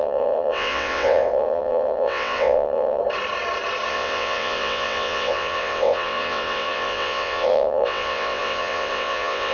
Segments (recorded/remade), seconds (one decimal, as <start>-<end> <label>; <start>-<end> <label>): 0.0-3.0 remade; 3.0-3.9 recorded; 3.9-9.5 remade